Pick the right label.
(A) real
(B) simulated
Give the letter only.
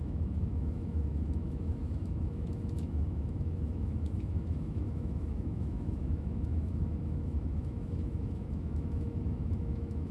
B